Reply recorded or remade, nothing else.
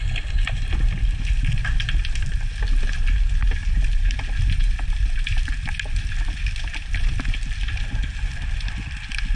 recorded